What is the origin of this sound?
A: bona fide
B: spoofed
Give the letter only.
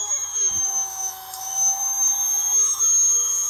B